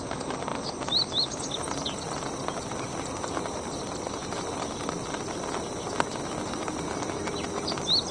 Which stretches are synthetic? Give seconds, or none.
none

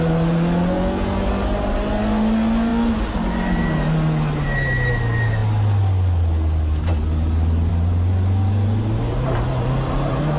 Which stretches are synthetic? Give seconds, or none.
none

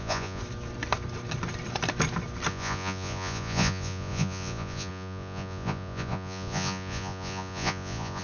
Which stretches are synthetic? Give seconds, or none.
0.0-0.4 (vocoder, Vocos); 2.5-8.2

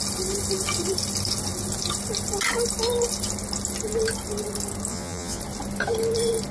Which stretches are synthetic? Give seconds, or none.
4.9-5.4 (vocoder, Vocos)

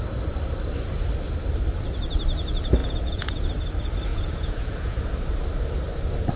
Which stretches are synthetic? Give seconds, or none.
2.8-3.4 (vocoder, Vocos); 4.1-5.0

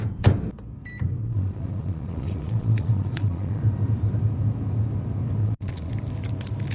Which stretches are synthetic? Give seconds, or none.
1.2-3.6 (vocoder, Vocos); 5.4-5.9

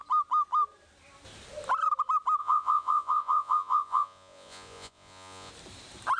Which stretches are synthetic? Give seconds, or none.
2.4-5.5 (vocoder, Vocos)

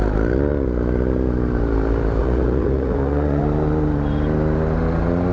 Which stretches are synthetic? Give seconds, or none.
2.2-3.4 (vocoder, Vocos)